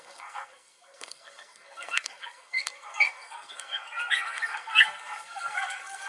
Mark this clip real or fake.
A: fake